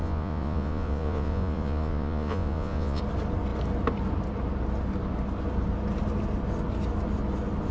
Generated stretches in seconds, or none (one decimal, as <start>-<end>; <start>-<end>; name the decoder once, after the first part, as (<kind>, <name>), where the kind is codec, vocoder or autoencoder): 0.0-3.0 (vocoder, Vocos)